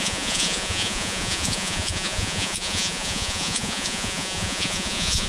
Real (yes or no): no